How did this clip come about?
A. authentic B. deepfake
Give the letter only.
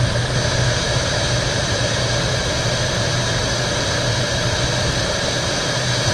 A